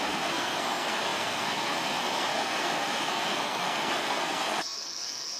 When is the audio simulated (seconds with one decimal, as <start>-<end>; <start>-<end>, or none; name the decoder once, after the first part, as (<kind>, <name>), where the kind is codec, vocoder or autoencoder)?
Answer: 0.0-5.4 (codec, SNAC)